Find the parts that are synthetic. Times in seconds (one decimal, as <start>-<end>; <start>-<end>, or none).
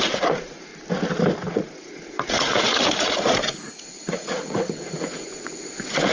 0.0-0.7; 1.5-6.1